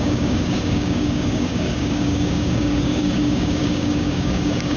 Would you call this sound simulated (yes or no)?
yes